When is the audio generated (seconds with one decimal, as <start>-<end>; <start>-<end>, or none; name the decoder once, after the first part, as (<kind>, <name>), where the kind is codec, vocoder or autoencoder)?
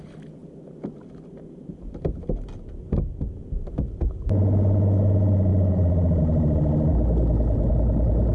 none